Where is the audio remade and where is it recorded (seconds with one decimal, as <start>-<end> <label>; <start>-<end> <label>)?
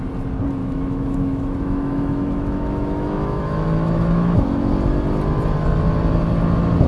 0.0-0.6 recorded; 0.6-4.7 remade; 4.7-6.9 recorded